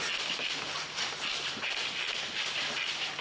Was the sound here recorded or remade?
remade